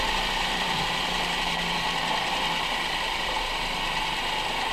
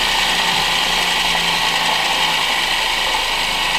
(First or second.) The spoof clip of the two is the first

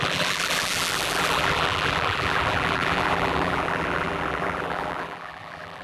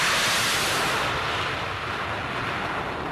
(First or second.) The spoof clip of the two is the first